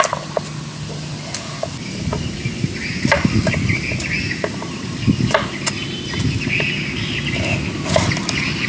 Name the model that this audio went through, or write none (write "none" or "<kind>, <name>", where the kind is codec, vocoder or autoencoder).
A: none